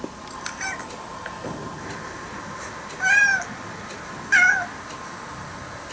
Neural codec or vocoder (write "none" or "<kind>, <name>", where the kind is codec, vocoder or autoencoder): none